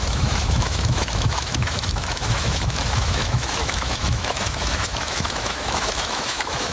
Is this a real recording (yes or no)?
no